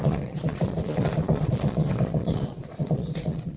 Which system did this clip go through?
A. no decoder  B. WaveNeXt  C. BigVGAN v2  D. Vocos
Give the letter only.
D